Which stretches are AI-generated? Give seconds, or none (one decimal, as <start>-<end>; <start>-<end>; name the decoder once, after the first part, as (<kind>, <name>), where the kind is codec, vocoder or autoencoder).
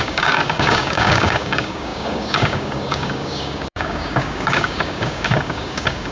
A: 0.0-6.1 (codec, DAC)